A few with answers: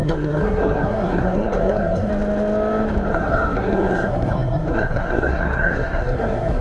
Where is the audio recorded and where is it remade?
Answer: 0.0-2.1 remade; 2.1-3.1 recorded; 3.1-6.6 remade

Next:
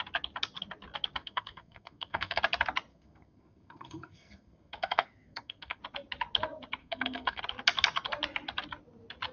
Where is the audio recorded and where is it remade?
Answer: 0.0-1.2 recorded; 1.2-2.4 remade; 2.4-2.9 recorded; 2.9-5.8 remade; 5.8-6.8 recorded; 6.8-7.4 remade; 7.4-9.3 recorded

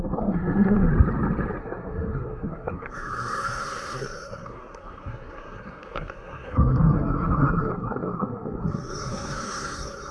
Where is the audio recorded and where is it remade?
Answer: 0.0-0.9 remade; 0.9-1.6 recorded; 1.6-10.1 remade

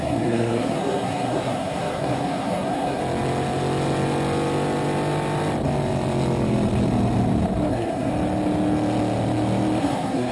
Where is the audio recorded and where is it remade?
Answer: 0.0-3.0 remade; 3.0-7.7 recorded; 7.7-8.1 remade; 8.1-9.8 recorded; 9.8-10.3 remade

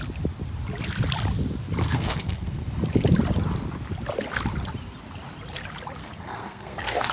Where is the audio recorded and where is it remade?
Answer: 0.0-1.8 recorded; 1.8-2.7 remade; 2.7-6.0 recorded; 6.0-7.1 remade

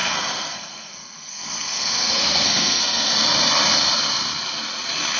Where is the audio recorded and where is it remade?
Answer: 0.0-3.1 remade; 3.1-5.2 recorded